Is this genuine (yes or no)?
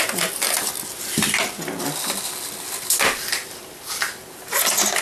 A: yes